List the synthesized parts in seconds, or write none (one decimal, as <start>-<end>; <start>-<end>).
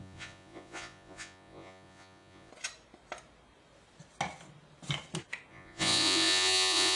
0.0-2.5; 5.5-7.0